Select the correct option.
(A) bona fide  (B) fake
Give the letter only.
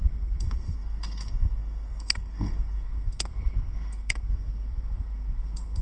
B